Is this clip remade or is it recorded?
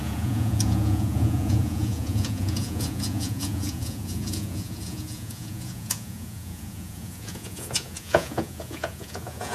remade